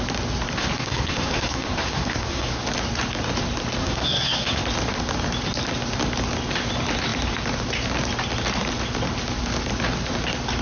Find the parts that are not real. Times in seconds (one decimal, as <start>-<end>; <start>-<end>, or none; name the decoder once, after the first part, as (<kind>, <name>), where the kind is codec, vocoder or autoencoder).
0.6-2.6 (codec, SNAC); 3.8-4.6